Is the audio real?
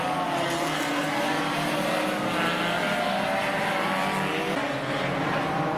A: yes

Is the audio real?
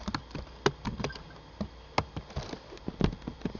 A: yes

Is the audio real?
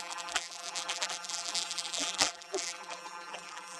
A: no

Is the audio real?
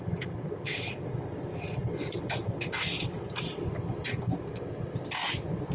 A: no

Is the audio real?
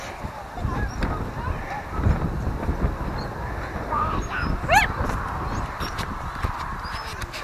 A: yes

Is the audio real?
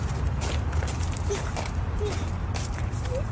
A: no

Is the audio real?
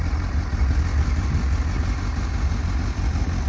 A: yes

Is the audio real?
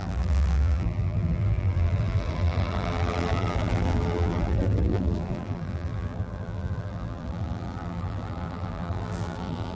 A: no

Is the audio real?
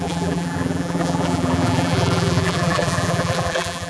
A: no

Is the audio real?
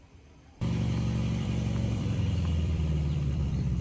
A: no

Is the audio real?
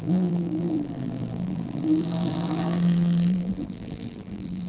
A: no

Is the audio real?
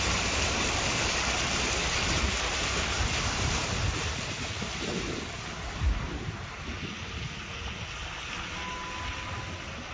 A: yes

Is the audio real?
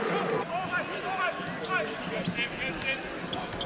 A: yes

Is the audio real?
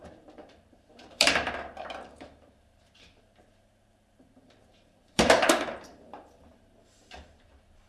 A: no